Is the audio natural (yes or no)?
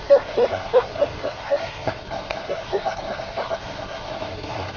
no